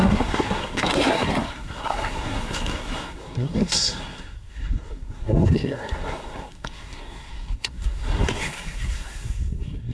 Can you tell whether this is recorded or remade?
remade